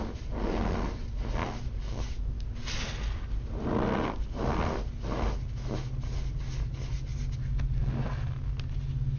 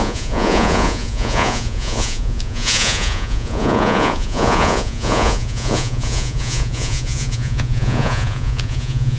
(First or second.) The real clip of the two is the first